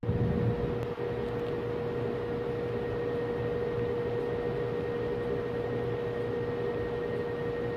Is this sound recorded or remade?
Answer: recorded